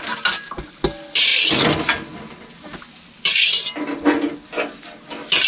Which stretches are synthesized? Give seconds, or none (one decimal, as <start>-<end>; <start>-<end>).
none